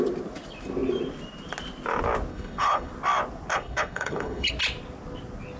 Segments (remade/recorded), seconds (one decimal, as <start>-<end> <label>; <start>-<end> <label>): 0.0-2.3 recorded; 2.3-2.9 remade; 2.9-3.5 recorded; 3.5-4.5 remade; 4.5-5.6 recorded